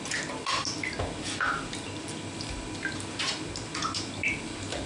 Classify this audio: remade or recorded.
recorded